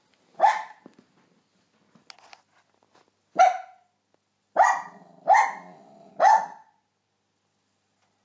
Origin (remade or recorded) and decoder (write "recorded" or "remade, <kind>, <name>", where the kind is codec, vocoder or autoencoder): recorded